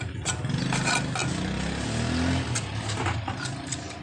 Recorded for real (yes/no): yes